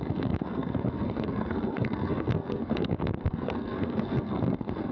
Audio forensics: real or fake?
fake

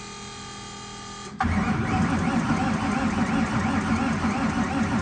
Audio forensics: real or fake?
real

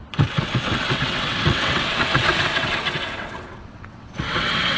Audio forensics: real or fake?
fake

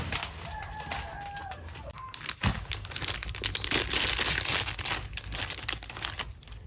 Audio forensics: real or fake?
real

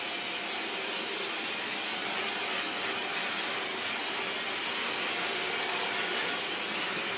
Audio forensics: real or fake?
real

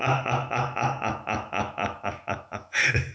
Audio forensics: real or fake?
fake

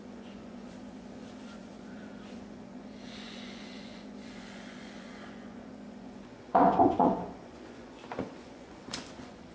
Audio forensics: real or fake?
fake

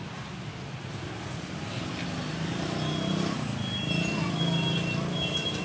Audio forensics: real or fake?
real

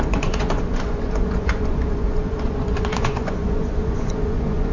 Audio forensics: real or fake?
fake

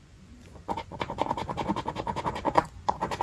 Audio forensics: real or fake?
fake